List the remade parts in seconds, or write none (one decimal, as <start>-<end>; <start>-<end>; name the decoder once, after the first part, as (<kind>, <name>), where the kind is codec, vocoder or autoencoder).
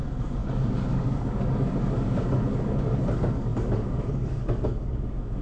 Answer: 0.0-5.4 (codec, DAC)